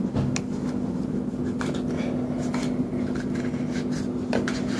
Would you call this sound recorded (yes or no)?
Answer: yes